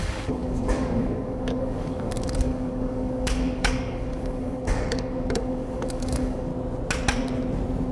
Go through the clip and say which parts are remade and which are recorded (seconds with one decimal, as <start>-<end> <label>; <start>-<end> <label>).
0.0-6.5 remade; 6.5-7.9 recorded